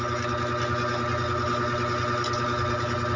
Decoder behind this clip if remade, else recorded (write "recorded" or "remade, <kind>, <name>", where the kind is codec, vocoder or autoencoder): recorded